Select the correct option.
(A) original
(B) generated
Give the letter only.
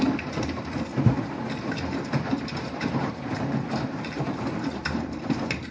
B